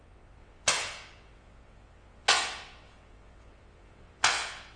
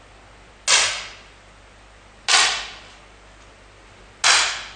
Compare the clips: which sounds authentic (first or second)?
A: second